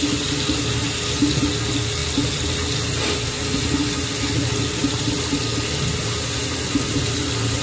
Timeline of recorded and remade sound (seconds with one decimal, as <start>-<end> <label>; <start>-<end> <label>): 0.0-7.6 recorded